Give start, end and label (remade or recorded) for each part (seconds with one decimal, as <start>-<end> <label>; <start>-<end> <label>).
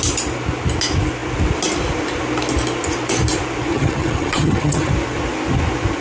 0.0-3.7 recorded; 3.7-4.9 remade; 4.9-6.0 recorded